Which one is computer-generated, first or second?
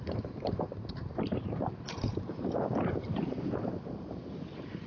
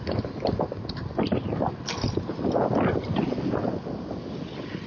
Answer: first